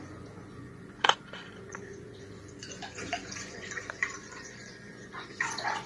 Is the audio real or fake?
fake